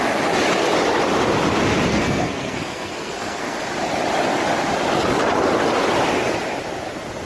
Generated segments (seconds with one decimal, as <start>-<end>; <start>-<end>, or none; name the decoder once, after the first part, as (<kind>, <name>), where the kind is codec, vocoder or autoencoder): 1.9-3.6 (codec, SNAC)